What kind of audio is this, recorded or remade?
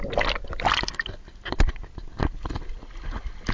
recorded